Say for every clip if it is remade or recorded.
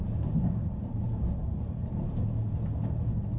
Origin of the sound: recorded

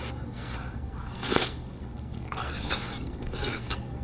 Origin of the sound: remade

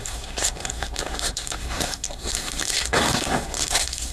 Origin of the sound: remade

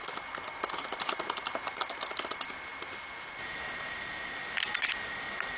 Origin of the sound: recorded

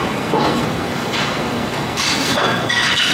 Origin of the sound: remade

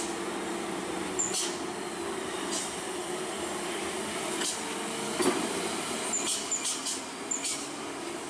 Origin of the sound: recorded